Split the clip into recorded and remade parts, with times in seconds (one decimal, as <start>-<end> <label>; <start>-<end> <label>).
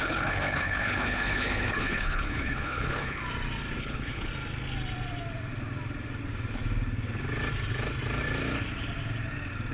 0.0-3.2 remade; 3.2-3.8 recorded; 3.8-4.3 remade; 4.3-9.7 recorded